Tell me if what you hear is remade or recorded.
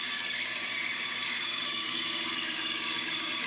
remade